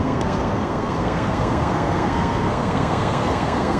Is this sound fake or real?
fake